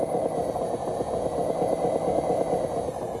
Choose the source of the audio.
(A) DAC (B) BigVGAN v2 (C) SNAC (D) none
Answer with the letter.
D